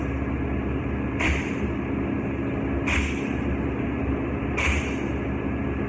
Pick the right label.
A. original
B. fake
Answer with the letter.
A